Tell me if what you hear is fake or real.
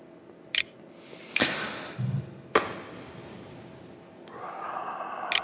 real